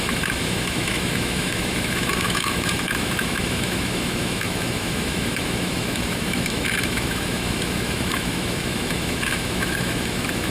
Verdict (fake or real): fake